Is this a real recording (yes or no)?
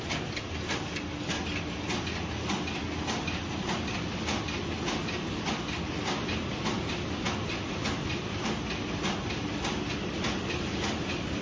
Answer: yes